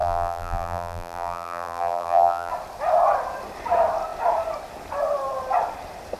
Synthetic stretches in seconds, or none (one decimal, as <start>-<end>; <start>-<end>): 0.0-2.5